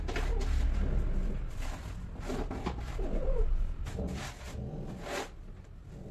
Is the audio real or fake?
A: real